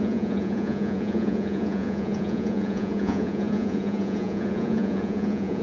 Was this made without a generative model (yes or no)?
no